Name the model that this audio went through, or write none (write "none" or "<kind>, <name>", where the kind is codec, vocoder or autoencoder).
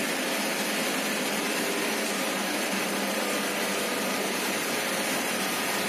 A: none